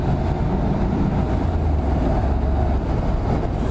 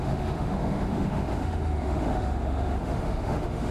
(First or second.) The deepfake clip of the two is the second